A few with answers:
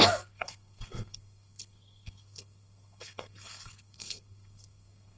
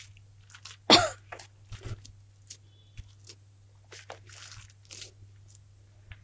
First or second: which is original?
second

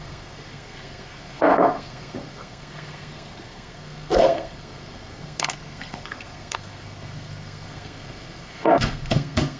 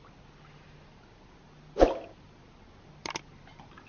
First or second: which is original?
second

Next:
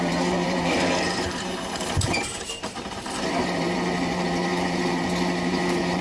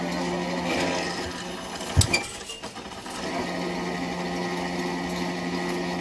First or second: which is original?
second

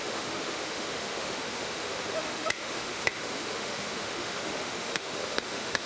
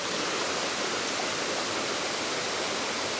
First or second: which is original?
second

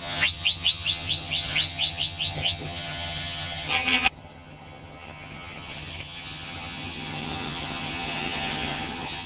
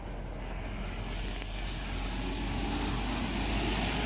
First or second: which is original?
second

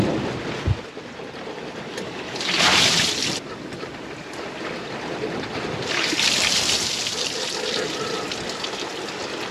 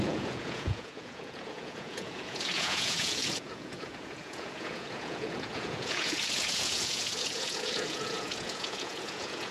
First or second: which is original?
first